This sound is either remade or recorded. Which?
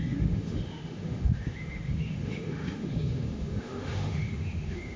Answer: remade